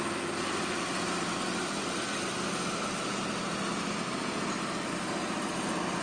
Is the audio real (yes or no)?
yes